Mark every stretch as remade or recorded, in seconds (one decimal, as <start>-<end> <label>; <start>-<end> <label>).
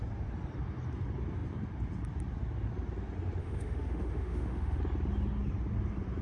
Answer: 0.0-3.4 recorded; 3.4-4.8 remade; 4.8-6.2 recorded